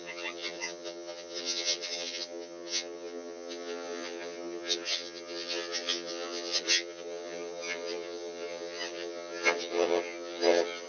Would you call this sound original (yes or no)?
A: no